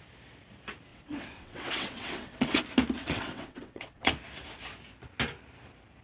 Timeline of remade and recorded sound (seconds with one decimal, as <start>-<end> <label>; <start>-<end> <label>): 0.0-0.9 recorded; 0.9-2.6 remade; 2.6-3.0 recorded; 3.0-4.1 remade; 4.1-6.0 recorded